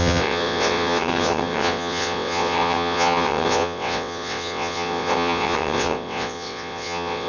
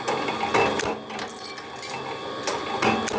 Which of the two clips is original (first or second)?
second